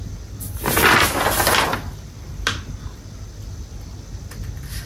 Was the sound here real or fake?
real